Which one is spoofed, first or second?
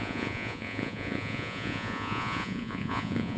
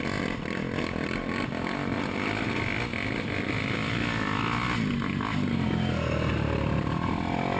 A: first